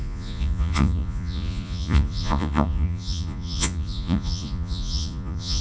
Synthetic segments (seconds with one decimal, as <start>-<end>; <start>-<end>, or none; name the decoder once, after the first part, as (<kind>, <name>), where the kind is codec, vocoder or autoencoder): 0.0-5.6 (vocoder, Vocos)